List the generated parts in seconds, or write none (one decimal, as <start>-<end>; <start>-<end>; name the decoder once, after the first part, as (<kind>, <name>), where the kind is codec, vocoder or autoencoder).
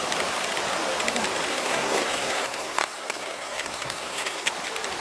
1.5-4.5 (codec, SNAC)